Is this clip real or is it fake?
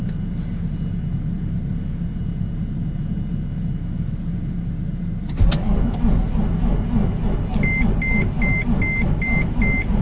real